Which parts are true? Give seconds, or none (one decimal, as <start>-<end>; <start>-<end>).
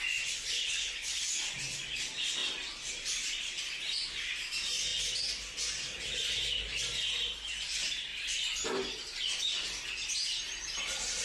0.0-0.6; 1.2-11.2